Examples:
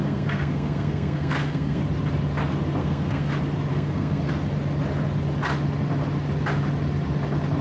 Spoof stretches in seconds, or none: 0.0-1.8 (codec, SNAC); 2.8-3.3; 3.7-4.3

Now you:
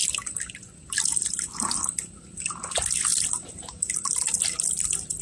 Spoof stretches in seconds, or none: none

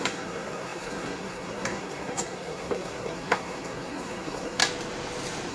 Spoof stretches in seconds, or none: 0.0-4.6 (codec, SNAC)

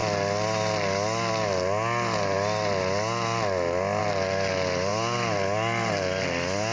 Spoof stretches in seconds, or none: none

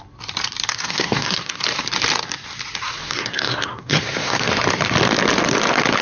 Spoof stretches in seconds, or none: 0.7-1.6 (codec, SNAC); 3.0-4.5